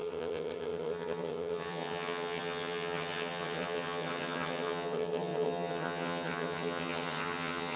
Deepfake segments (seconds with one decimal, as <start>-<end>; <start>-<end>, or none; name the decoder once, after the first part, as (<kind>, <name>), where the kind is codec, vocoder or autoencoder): 0.0-7.8 (vocoder, HiFi-GAN)